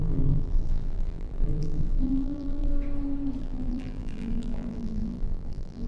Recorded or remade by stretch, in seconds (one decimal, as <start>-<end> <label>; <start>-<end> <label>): 0.0-2.7 remade; 2.7-3.4 recorded; 3.4-5.9 remade